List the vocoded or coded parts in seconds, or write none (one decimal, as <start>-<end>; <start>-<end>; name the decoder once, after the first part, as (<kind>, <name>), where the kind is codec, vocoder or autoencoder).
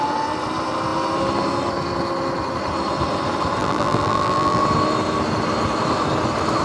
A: 3.6-4.6 (vocoder, BigVGAN v2)